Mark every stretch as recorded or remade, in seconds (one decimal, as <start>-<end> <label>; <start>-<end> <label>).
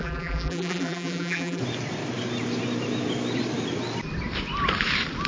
0.0-1.6 remade; 1.6-5.3 recorded